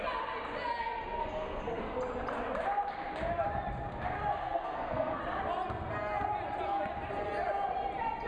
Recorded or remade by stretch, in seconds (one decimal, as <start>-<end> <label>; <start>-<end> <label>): 0.0-1.2 recorded; 1.2-1.8 remade; 1.8-4.4 recorded; 4.4-5.2 remade; 5.2-8.3 recorded